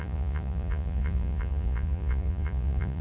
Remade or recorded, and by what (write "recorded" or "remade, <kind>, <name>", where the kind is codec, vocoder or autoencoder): remade, vocoder, Vocos